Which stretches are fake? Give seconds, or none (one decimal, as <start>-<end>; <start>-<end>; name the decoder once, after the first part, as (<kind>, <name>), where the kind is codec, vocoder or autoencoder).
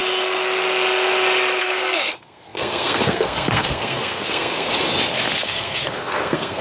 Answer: 1.6-4.7 (codec, SNAC); 5.4-6.6